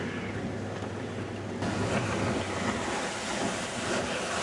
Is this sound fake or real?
real